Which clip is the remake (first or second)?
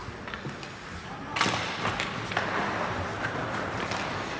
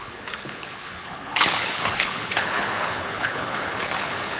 second